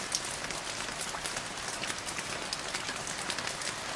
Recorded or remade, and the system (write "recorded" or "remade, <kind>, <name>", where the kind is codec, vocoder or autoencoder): recorded